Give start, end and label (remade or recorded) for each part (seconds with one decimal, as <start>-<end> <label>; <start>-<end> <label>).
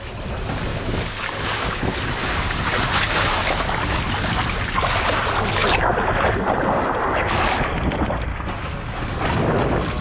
0.0-0.7 recorded; 0.7-1.8 remade; 1.8-2.2 recorded; 2.2-3.4 remade; 3.4-8.3 recorded; 8.3-9.0 remade; 9.0-10.0 recorded